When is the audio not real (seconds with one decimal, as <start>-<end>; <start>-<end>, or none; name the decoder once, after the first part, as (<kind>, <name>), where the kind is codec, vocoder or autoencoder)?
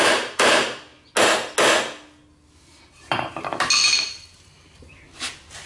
0.0-0.9 (vocoder, BigVGAN v2); 2.8-5.7